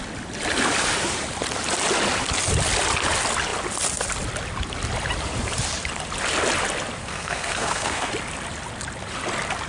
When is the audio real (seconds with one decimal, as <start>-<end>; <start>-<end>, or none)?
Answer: 0.0-7.0; 8.1-9.7